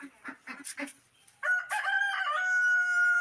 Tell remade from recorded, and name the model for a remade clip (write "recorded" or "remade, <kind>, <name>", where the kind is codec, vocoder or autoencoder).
remade, vocoder, BigVGAN v2